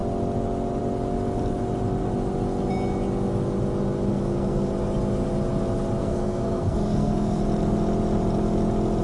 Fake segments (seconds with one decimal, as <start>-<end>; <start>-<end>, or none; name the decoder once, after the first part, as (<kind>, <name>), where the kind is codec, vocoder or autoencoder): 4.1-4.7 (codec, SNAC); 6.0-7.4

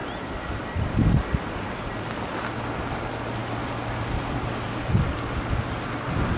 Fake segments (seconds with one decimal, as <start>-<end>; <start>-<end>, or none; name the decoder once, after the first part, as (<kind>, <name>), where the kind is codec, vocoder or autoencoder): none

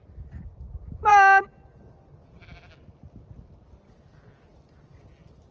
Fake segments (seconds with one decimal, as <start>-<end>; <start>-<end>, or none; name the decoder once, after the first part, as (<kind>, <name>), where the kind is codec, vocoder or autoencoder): none

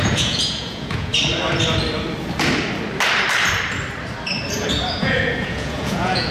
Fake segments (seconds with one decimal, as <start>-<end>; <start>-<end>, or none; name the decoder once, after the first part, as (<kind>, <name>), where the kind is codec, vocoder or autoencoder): 0.0-1.1 (vocoder, Vocos); 4.9-6.3